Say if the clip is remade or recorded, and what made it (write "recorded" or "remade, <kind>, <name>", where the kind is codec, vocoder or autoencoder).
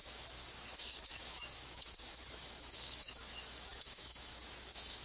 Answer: remade, autoencoder, DAC-VAE